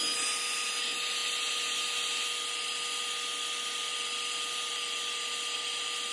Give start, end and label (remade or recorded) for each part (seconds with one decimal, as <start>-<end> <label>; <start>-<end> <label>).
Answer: 0.0-6.1 recorded